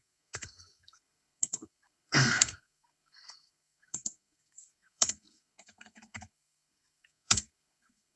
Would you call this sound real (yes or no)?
no